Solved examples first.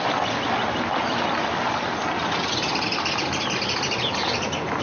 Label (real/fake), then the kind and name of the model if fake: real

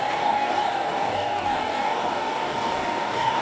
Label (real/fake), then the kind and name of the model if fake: fake, codec, DAC